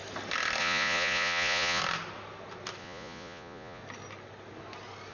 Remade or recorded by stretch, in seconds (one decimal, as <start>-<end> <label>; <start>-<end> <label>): 0.0-0.6 recorded; 0.6-1.8 remade; 1.8-2.8 recorded; 2.8-3.8 remade; 3.8-5.1 recorded